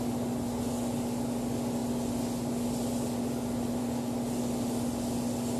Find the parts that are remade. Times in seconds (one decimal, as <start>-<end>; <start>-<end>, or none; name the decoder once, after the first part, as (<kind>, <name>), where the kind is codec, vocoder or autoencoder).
none